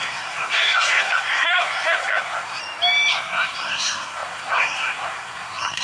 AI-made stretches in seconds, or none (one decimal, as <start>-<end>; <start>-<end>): 0.0-2.6; 3.1-5.8